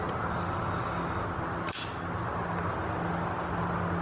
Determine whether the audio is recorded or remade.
recorded